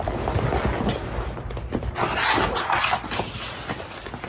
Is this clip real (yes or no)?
yes